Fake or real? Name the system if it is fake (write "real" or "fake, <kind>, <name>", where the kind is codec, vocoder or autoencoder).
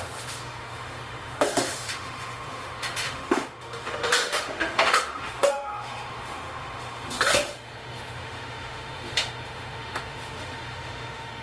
fake, autoencoder, DAC-VAE